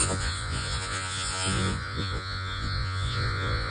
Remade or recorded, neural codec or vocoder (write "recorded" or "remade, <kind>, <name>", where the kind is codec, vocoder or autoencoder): remade, vocoder, Vocos